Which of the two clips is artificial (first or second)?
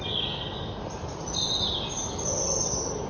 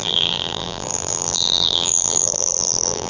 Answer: second